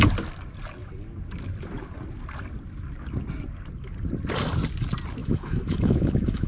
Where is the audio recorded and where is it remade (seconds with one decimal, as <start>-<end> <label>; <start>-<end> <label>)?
0.0-5.2 recorded; 5.2-6.5 remade